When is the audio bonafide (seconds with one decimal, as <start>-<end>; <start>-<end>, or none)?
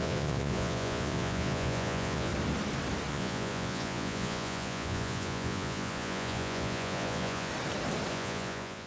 2.3-3.1; 7.5-8.1